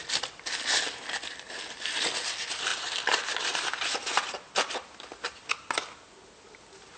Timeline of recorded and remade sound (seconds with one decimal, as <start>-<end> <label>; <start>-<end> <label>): 0.0-7.0 recorded

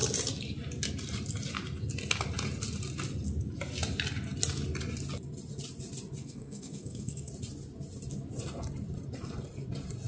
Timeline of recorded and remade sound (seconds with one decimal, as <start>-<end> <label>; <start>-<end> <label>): 0.0-6.2 recorded; 6.2-7.3 remade; 7.3-10.1 recorded

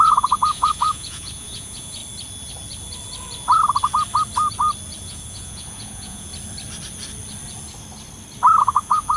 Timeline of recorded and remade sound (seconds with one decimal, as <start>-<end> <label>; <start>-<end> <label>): 0.0-2.0 remade; 2.0-5.0 recorded; 5.0-6.3 remade; 6.3-8.6 recorded; 8.6-9.2 remade

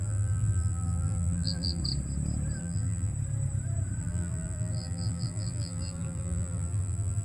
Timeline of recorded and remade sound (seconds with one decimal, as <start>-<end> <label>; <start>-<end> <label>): 0.0-1.8 remade; 1.8-2.6 recorded; 2.6-3.1 remade; 3.1-4.0 recorded; 4.0-7.2 remade

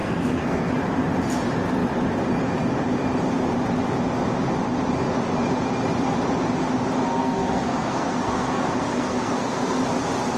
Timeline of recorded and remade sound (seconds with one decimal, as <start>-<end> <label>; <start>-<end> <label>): 0.0-0.7 remade; 0.7-7.2 recorded; 7.2-9.8 remade; 9.8-10.4 recorded

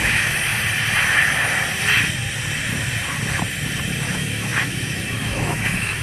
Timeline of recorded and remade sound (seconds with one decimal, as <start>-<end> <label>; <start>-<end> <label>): 0.0-0.5 remade; 0.5-4.1 recorded; 4.1-6.0 remade

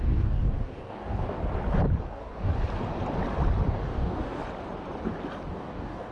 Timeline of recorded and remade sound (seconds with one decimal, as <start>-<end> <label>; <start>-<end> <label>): 0.0-1.4 remade; 1.4-2.0 recorded; 2.0-2.5 remade; 2.5-3.7 recorded; 3.7-4.4 remade; 4.4-5.5 recorded; 5.5-6.1 remade

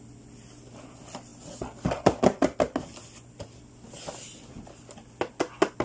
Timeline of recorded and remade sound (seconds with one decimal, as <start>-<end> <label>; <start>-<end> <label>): 0.0-5.8 recorded